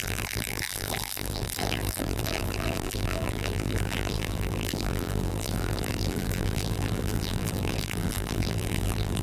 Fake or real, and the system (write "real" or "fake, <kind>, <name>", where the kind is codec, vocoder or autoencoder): fake, vocoder, BigVGAN v2